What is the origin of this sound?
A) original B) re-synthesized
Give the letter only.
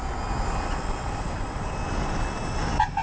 A